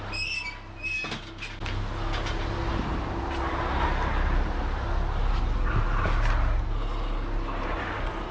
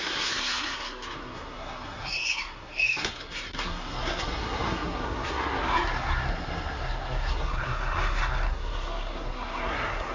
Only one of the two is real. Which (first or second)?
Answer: first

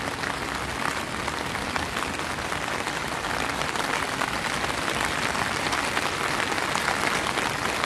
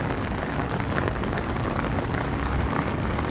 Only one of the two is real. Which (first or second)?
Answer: first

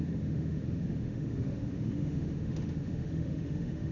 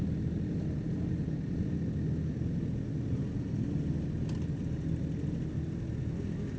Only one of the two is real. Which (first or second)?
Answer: second